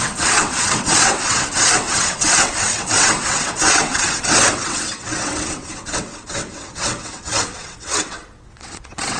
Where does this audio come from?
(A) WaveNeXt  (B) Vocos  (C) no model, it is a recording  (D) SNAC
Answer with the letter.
A